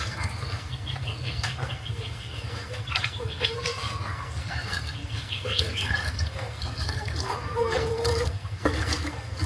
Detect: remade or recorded remade